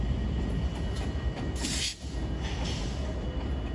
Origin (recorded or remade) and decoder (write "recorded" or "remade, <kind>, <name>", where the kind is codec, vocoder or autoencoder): recorded